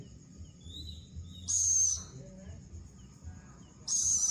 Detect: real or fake real